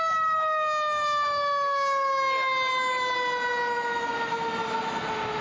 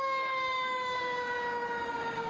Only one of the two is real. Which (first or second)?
first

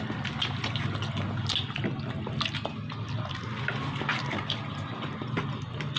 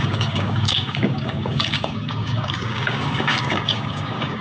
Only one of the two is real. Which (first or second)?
first